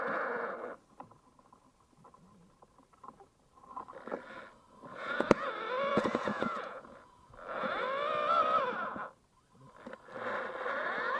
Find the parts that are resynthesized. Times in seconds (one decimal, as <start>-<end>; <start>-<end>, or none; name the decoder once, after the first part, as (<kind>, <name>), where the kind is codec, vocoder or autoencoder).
4.9-5.5 (vocoder, Vocos); 5.9-7.3